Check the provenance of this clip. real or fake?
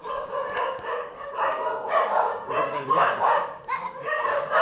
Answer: fake